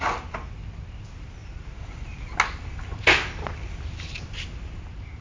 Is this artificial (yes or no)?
no